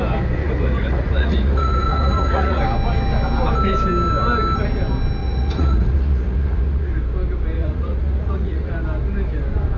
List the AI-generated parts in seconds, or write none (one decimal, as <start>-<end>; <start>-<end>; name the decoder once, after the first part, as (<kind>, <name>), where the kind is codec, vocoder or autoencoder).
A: 0.4-2.6 (vocoder, Vocos); 5.2-6.9; 7.6-8.7